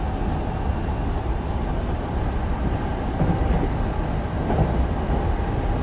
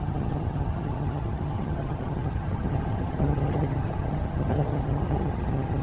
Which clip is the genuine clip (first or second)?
first